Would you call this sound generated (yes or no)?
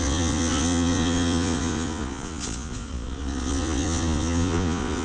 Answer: yes